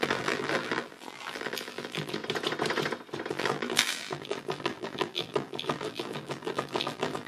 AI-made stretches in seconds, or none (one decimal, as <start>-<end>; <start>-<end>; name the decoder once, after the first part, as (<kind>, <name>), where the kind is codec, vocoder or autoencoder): 0.0-2.2 (vocoder, BigVGAN v2); 3.3-7.3